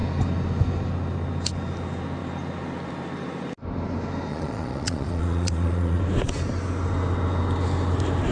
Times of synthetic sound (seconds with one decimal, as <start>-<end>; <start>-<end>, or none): 4.3-6.0